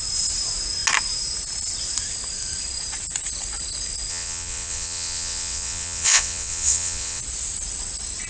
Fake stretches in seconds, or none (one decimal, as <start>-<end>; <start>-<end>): 4.1-7.2